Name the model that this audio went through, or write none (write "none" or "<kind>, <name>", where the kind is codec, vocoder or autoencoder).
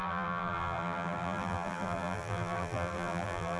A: vocoder, BigVGAN v2